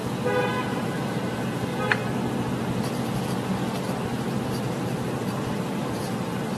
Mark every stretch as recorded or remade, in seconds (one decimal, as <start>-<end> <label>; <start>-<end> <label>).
0.0-0.6 recorded; 0.6-1.7 remade; 1.7-4.7 recorded; 4.7-6.6 remade

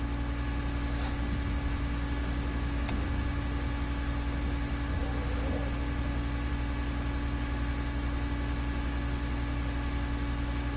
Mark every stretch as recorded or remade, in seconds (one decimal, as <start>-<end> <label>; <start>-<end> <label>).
0.0-10.8 recorded

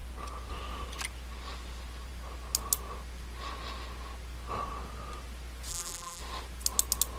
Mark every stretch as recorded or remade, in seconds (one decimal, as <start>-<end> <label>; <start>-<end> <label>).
0.0-5.7 recorded; 5.7-6.2 remade; 6.2-7.2 recorded

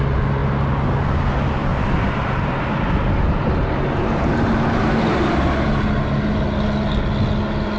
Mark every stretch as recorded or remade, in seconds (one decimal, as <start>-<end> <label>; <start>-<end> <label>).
0.0-1.7 recorded; 1.7-5.7 remade; 5.7-7.8 recorded

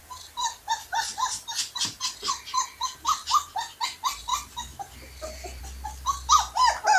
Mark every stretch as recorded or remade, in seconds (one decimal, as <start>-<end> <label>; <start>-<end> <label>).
0.0-7.0 recorded

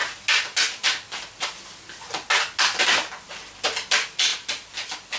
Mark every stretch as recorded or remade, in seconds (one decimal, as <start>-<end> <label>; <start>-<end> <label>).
0.0-5.2 recorded

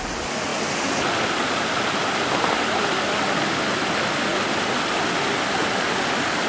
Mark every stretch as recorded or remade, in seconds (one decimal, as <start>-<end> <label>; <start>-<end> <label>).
0.0-6.5 remade